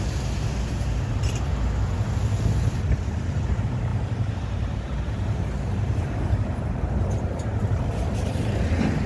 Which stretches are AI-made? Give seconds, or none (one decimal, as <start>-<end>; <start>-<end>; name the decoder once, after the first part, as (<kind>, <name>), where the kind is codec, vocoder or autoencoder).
0.0-1.5 (vocoder, BigVGAN v2); 3.0-9.1